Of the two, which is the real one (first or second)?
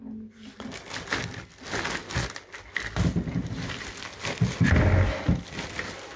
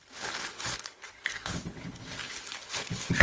first